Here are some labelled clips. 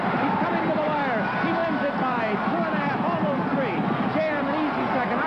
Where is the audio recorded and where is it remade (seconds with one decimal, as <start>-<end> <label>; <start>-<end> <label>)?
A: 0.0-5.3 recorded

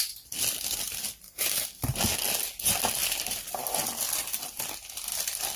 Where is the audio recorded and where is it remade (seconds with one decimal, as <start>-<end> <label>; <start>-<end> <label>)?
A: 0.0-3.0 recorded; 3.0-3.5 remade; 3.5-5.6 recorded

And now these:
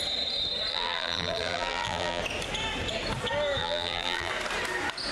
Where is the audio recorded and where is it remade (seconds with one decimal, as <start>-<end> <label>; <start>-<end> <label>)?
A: 0.0-0.7 recorded; 0.7-2.2 remade; 2.2-3.6 recorded; 3.6-4.3 remade; 4.3-5.1 recorded